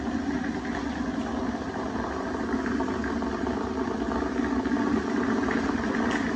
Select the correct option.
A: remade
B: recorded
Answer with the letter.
B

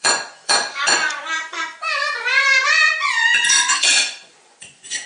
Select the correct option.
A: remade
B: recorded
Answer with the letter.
A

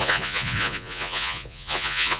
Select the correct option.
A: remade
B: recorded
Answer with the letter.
A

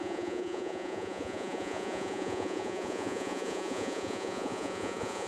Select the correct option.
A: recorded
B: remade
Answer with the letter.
B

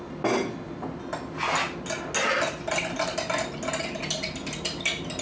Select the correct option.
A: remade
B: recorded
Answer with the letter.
B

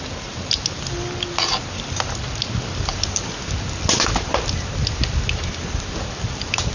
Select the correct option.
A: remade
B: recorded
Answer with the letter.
B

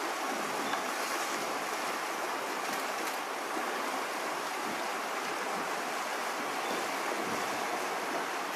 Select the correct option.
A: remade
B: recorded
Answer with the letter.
B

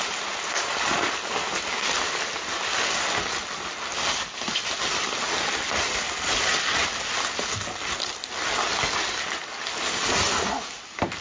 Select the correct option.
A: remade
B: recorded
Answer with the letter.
B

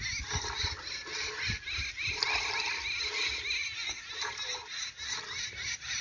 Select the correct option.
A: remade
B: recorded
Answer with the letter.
B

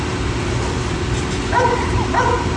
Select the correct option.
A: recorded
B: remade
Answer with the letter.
A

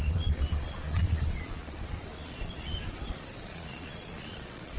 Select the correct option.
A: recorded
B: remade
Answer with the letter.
B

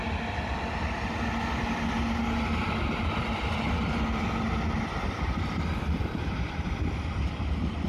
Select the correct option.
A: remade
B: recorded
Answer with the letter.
B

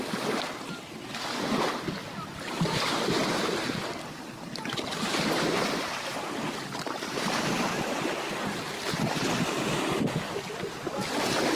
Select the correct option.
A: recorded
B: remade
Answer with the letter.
A